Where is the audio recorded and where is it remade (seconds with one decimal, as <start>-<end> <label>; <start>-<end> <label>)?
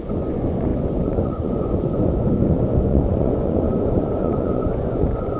0.0-5.4 remade